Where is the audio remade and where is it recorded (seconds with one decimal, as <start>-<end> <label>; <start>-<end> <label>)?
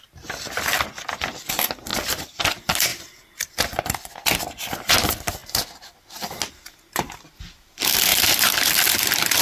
0.0-1.9 recorded; 1.9-2.4 remade; 2.4-8.1 recorded; 8.1-8.7 remade; 8.7-9.4 recorded